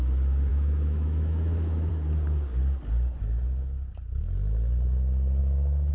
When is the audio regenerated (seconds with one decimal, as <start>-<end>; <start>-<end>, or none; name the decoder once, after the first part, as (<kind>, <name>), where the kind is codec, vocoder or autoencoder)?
0.5-1.9 (autoencoder, DAC-VAE); 5.4-5.9